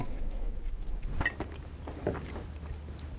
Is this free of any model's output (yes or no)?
yes